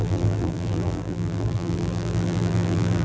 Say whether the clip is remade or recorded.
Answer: remade